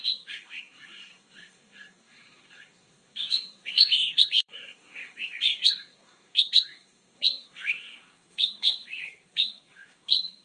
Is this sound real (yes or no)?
no